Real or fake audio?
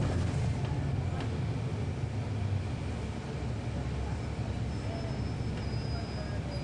real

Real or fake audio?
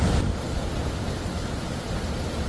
real